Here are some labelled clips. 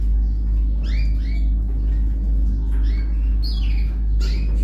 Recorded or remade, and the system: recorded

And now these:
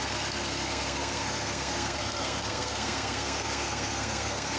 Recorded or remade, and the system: remade, codec, SNAC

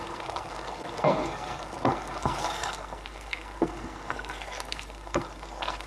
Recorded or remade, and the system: remade, codec, SNAC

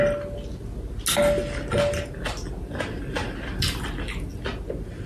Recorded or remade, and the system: recorded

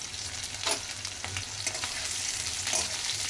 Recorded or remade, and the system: recorded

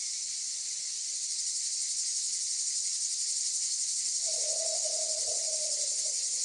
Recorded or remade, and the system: recorded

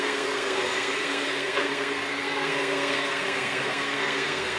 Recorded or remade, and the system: remade, codec, SNAC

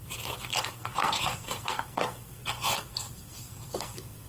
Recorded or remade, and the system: remade, codec, SNAC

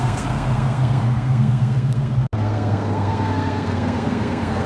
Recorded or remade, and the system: remade, codec, SNAC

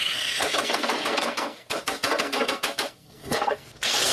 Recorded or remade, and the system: remade, codec, SNAC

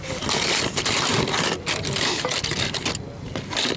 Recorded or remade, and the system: recorded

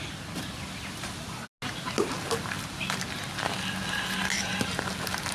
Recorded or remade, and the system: recorded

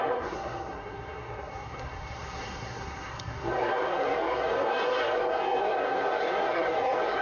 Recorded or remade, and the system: remade, codec, SNAC